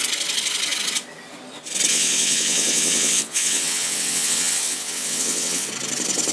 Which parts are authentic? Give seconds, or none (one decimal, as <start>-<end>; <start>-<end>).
0.0-1.9; 5.7-6.3